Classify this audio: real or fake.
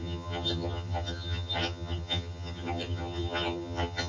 fake